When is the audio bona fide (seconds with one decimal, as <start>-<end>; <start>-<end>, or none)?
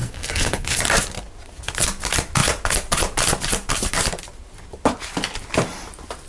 0.8-6.3